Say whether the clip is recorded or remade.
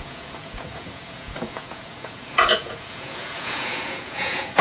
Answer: remade